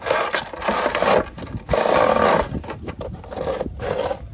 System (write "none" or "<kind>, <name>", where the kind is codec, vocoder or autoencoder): none